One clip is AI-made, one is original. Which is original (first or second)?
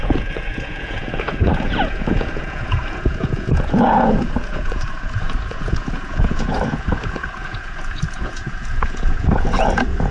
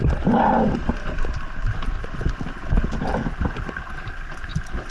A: second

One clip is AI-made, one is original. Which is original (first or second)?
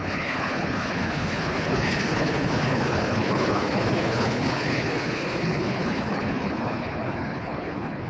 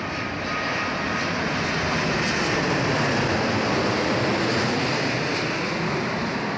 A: second